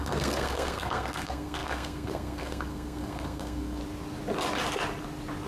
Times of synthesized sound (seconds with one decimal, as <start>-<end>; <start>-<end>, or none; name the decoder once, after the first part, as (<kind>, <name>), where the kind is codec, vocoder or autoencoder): 0.0-3.8 (codec, SNAC)